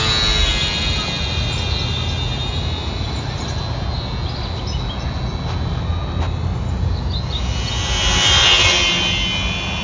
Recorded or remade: recorded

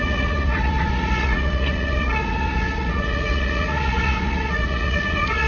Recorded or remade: remade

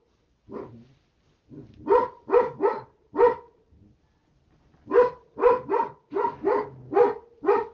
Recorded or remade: recorded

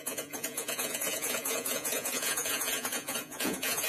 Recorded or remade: remade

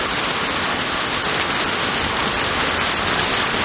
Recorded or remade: recorded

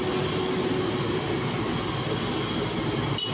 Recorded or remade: recorded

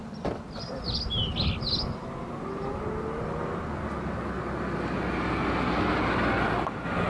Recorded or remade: recorded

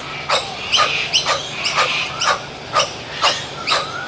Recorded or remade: recorded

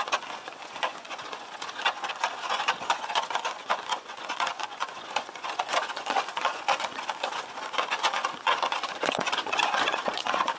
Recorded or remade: remade